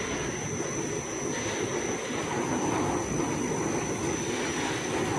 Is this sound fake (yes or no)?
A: no